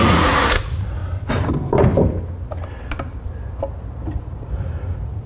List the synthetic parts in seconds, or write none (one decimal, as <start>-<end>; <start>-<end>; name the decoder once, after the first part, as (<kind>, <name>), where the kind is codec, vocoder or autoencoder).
0.0-1.0 (vocoder, Vocos); 4.2-5.3